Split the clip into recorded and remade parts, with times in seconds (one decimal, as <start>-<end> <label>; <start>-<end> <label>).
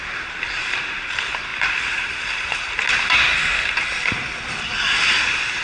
0.0-3.4 remade; 3.4-5.6 recorded